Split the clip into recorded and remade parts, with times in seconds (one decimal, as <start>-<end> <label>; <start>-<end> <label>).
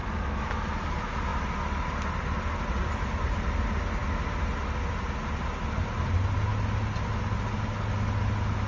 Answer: 0.0-0.6 remade; 0.6-8.7 recorded